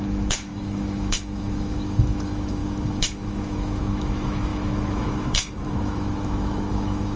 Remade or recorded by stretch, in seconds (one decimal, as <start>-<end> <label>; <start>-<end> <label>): 0.0-7.2 remade